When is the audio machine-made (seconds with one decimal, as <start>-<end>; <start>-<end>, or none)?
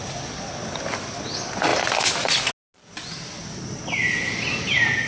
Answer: none